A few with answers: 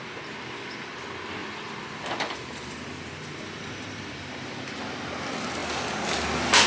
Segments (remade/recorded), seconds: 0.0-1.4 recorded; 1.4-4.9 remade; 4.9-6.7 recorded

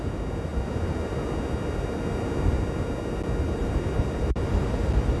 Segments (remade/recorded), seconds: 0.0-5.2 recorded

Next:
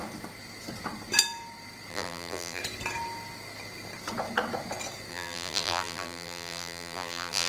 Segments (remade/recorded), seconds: 0.0-1.9 recorded; 1.9-2.6 remade; 2.6-5.1 recorded; 5.1-7.5 remade

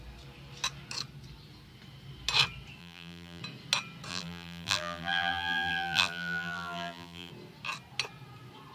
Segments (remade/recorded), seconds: 0.0-2.8 recorded; 2.8-3.4 remade; 3.4-4.1 recorded; 4.1-7.3 remade; 7.3-8.7 recorded

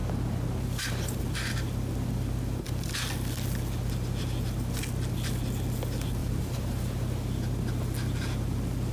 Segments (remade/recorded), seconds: 0.0-6.2 recorded; 6.2-6.8 remade; 6.8-8.9 recorded